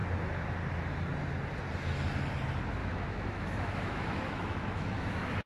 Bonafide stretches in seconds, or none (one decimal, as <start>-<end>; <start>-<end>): 0.0-2.8